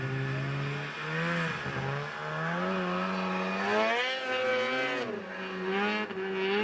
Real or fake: real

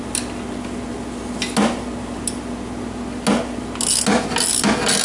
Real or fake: real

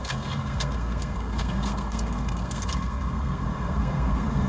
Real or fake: fake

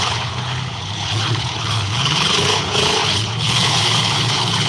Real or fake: fake